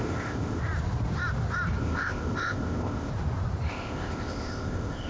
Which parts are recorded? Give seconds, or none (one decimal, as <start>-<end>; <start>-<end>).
0.6-1.8; 3.1-3.7